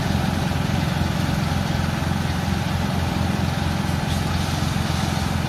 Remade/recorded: recorded